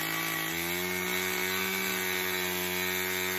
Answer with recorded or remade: recorded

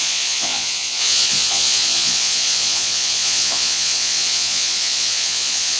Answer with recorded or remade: remade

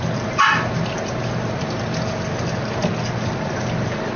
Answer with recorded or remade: recorded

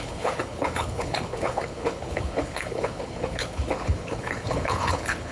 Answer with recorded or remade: remade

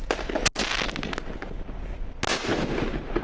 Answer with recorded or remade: recorded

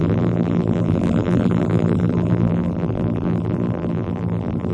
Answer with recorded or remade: remade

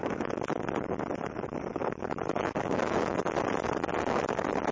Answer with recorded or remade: remade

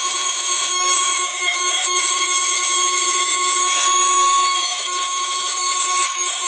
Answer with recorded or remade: remade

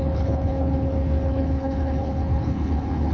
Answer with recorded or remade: remade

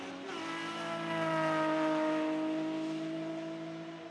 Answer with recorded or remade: recorded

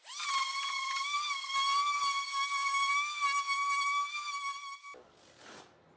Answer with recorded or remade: recorded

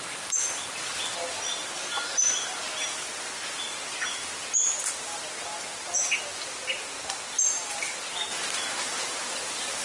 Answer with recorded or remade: recorded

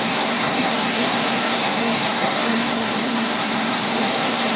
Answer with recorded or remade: remade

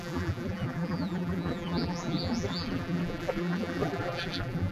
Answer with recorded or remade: remade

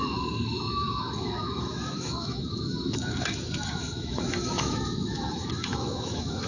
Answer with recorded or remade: remade